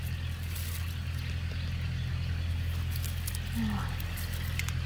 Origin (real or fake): real